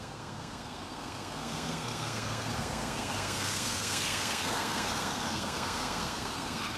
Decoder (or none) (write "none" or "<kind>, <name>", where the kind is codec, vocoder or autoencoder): codec, SNAC